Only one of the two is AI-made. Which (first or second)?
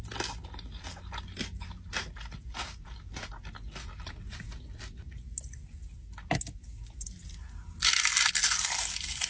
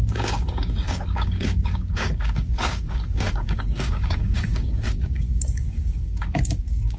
second